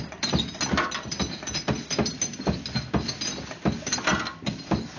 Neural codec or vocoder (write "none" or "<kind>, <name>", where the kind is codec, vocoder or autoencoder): none